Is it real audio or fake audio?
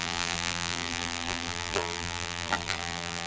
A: fake